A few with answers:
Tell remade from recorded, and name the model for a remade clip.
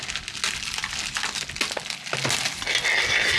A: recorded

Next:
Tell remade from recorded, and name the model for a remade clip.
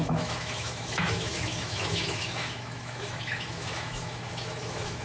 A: remade, autoencoder, DAC-VAE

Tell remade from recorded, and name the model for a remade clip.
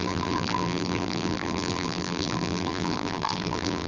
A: remade, vocoder, BigVGAN v2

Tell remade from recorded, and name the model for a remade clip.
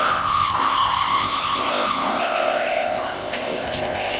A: remade, codec, ZipCodec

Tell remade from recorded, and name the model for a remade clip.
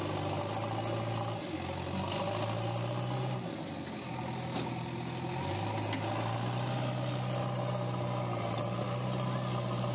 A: recorded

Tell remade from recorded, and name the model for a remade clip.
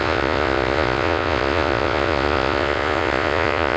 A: remade, vocoder, Vocos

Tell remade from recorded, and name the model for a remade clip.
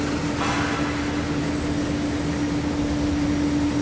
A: recorded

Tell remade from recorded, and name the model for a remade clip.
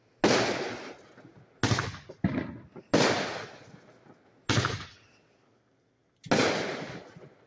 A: recorded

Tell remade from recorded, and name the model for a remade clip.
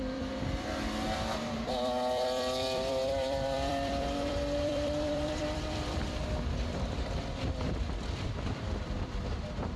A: remade, vocoder, BigVGAN v2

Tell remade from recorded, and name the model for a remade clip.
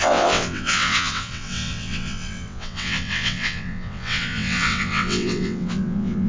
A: remade, vocoder, WaveNeXt